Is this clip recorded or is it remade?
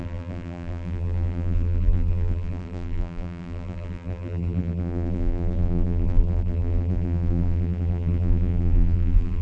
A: remade